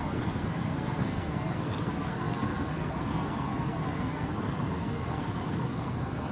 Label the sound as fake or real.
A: fake